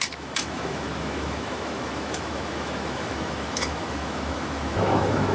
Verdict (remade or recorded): remade